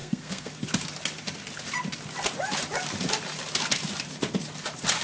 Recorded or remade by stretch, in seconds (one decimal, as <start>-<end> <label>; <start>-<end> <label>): 0.0-0.5 remade; 0.5-5.0 recorded